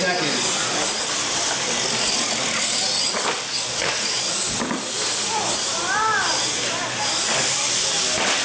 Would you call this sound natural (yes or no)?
yes